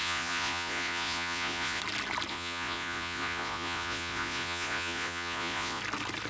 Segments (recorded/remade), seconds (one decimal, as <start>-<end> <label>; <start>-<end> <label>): 0.0-1.8 remade; 1.8-2.3 recorded; 2.3-5.8 remade; 5.8-6.3 recorded